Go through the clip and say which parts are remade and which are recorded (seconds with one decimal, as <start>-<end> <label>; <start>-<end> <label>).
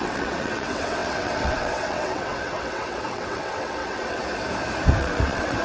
0.0-4.2 remade; 4.2-5.0 recorded; 5.0-5.6 remade